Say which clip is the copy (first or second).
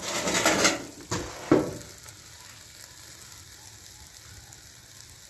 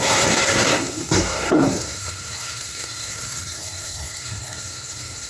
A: second